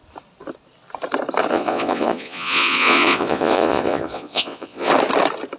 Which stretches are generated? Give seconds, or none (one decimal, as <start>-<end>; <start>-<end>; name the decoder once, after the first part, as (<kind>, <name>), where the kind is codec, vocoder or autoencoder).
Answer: 1.5-4.9 (vocoder, Vocos)